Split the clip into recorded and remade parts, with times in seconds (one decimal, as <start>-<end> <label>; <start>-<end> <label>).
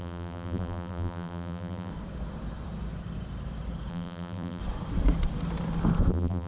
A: 0.0-1.9 remade; 1.9-3.9 recorded; 3.9-4.6 remade; 4.6-6.1 recorded; 6.1-6.5 remade